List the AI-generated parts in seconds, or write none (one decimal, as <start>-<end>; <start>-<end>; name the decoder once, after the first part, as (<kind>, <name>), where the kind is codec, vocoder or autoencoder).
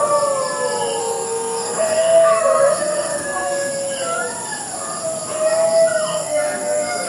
1.0-3.7 (codec, SNAC); 6.1-7.1